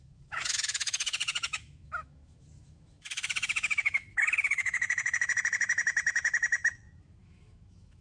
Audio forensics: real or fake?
fake